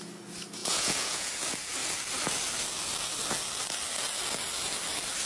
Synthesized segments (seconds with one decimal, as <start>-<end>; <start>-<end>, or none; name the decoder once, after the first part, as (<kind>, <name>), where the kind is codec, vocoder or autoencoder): 0.6-1.3 (vocoder, Vocos)